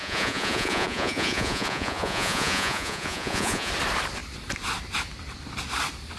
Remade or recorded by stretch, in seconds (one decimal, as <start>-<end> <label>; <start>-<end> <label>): 0.0-3.7 remade; 3.7-6.2 recorded